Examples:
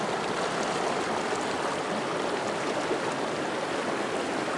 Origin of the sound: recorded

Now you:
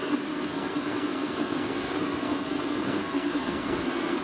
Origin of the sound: remade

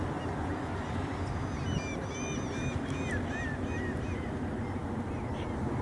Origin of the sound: recorded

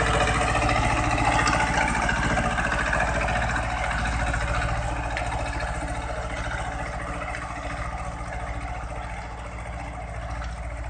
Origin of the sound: recorded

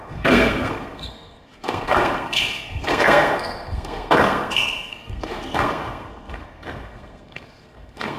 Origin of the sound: remade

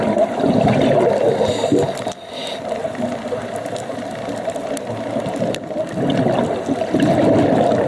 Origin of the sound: recorded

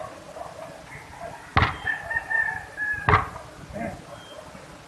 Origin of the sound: recorded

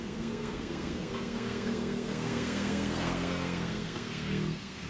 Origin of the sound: remade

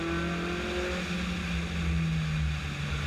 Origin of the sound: recorded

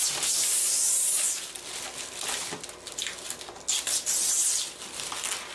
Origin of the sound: recorded